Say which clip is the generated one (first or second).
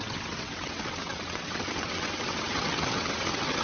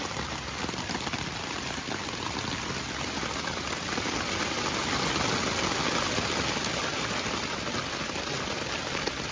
first